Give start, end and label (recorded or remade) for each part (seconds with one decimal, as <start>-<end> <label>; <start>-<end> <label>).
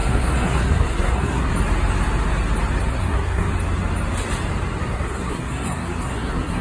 0.0-1.5 remade; 1.5-2.9 recorded; 2.9-3.5 remade; 3.5-4.8 recorded; 4.8-6.6 remade